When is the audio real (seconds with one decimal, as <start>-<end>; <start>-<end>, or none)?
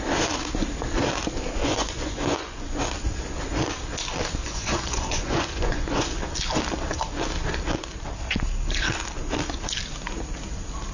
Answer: 0.0-1.6; 2.7-4.4; 6.1-10.9